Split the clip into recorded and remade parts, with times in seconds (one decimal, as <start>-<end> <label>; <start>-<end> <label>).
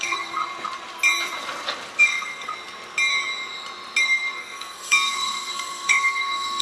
0.0-0.4 remade; 0.4-2.0 recorded; 2.0-2.5 remade; 2.5-4.0 recorded; 4.0-6.6 remade